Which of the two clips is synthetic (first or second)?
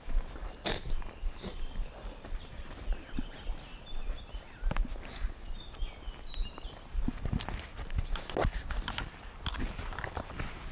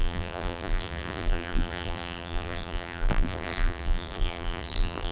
second